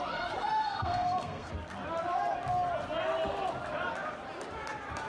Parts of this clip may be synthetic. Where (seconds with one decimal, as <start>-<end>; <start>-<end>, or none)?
0.6-1.5